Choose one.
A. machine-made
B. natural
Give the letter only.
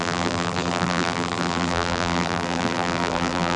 A